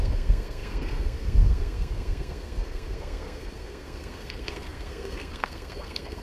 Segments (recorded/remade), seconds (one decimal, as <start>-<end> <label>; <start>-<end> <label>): 0.0-6.2 remade